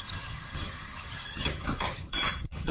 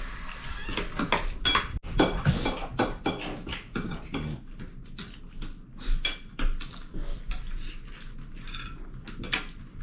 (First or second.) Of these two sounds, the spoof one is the first